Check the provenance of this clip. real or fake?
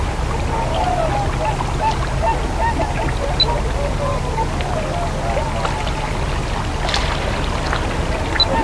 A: real